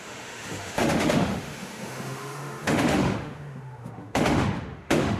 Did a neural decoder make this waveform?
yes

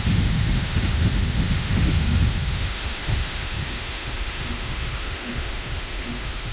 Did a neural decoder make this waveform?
yes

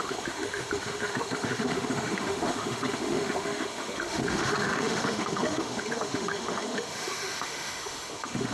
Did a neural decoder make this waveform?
yes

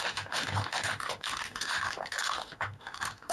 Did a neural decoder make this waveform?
yes